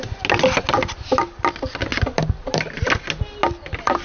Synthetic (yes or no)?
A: no